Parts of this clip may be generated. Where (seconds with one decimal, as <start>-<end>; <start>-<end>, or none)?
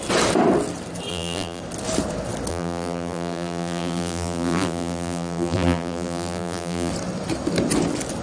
1.1-1.6; 2.5-6.9